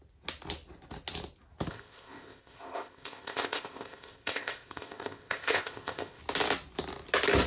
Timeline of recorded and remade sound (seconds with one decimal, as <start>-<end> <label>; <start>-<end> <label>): 0.0-1.7 recorded; 1.7-6.2 remade; 6.2-7.5 recorded